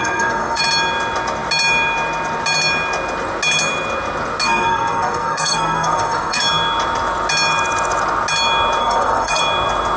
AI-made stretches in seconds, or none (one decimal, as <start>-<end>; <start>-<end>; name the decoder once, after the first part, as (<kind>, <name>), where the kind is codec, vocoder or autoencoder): 0.0-0.6 (codec, SNAC); 4.4-6.4; 8.8-9.4